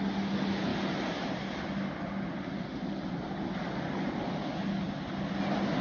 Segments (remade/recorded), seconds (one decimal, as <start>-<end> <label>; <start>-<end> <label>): 0.0-5.8 recorded